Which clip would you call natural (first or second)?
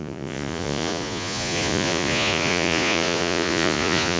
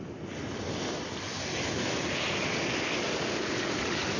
second